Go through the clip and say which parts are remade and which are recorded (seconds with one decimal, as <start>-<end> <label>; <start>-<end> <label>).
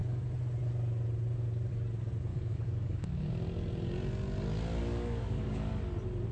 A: 0.0-2.3 recorded; 2.3-3.3 remade; 3.3-4.8 recorded; 4.8-5.8 remade; 5.8-6.3 recorded